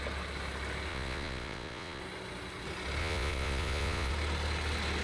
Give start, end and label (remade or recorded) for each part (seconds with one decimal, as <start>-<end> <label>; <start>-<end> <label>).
0.0-0.9 recorded; 0.9-2.0 remade; 2.0-3.0 recorded; 3.0-4.1 remade; 4.1-5.0 recorded